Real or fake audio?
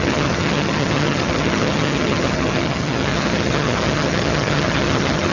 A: fake